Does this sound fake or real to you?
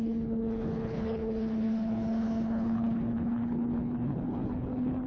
fake